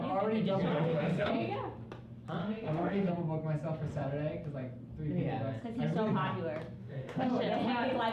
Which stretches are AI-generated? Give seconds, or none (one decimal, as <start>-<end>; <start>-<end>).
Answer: 0.7-1.3; 2.4-3.1; 6.8-7.3